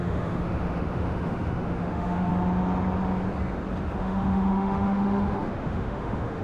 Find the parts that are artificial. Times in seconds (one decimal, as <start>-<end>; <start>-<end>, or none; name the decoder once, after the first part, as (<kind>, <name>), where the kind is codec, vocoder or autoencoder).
0.0-2.3 (autoencoder, DAC-VAE); 4.0-6.4